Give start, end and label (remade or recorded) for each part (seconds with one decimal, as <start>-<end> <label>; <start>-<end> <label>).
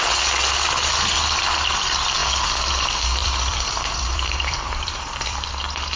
0.0-3.2 recorded; 3.2-5.6 remade; 5.6-6.0 recorded